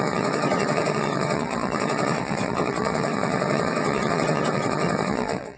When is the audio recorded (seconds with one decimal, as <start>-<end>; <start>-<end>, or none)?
none